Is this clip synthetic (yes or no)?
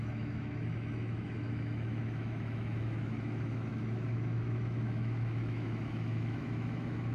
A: yes